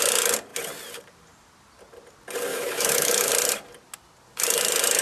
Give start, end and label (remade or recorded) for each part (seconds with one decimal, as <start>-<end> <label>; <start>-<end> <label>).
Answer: 0.0-2.5 recorded; 2.5-3.3 remade; 3.3-5.0 recorded